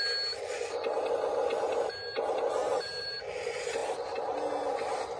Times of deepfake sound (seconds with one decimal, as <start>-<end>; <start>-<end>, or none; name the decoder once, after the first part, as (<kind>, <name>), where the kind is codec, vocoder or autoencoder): 2.6-3.2 (vocoder, BigVGAN v2)